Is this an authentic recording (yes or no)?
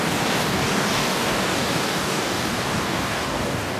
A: no